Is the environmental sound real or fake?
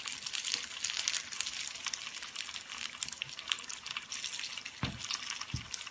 real